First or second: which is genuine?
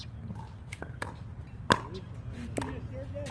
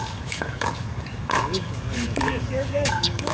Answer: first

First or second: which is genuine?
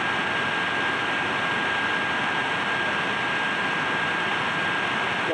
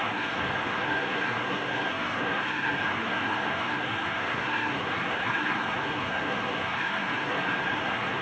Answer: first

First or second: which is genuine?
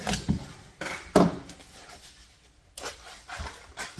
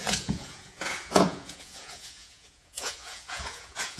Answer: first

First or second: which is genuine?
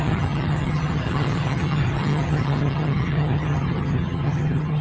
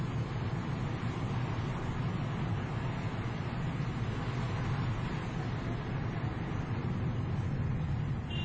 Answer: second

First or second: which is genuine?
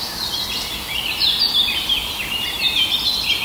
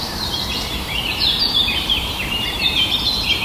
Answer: first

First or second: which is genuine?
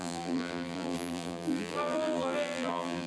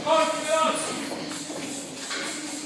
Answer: second